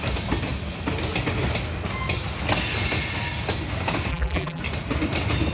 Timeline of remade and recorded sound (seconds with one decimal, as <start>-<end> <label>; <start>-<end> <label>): 0.0-4.1 recorded; 4.1-4.6 remade; 4.6-5.5 recorded